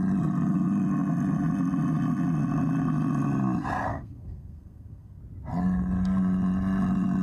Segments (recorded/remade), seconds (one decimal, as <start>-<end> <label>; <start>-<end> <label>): 0.0-3.9 recorded; 3.9-5.2 remade; 5.2-7.2 recorded